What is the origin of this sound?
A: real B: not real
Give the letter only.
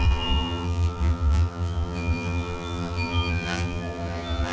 B